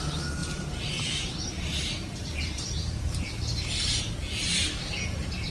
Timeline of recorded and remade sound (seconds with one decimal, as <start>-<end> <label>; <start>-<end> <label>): 0.0-0.4 recorded; 0.4-3.7 remade; 3.7-4.6 recorded; 4.6-5.5 remade

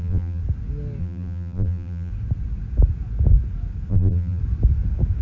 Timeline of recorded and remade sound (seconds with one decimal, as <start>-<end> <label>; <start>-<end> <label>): 0.0-0.4 remade; 0.4-1.0 recorded; 1.0-2.1 remade; 2.1-3.9 recorded; 3.9-4.4 remade; 4.4-5.2 recorded

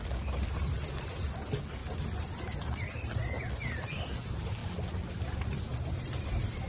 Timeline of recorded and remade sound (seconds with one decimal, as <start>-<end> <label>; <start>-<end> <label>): 0.0-1.8 remade; 1.8-2.3 recorded; 2.3-3.2 remade; 3.2-3.9 recorded; 3.9-6.7 remade

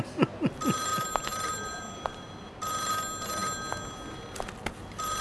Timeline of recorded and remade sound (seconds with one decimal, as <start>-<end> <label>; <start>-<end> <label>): 0.0-0.9 recorded; 0.9-2.6 remade; 2.6-5.2 recorded

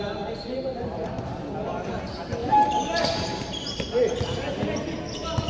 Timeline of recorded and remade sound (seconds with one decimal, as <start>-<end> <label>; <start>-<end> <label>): 0.0-2.4 recorded; 2.4-3.9 remade; 3.9-5.5 recorded

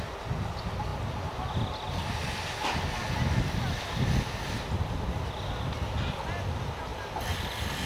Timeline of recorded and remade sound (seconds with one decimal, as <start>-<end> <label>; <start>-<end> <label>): 0.0-7.9 recorded